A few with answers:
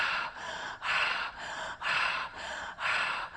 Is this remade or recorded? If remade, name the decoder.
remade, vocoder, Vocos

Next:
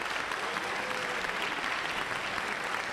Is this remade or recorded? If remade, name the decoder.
recorded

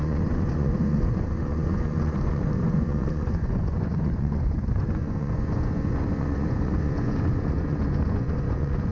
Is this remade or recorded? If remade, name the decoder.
remade, vocoder, Vocos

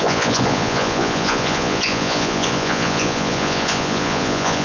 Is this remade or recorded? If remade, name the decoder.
remade, vocoder, Vocos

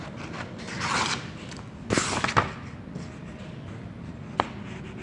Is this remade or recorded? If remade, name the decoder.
recorded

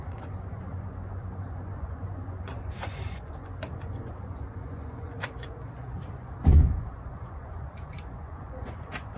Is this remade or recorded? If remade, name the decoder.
remade, vocoder, Vocos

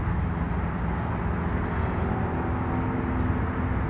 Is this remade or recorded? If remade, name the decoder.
recorded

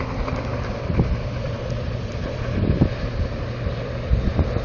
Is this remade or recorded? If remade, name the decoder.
recorded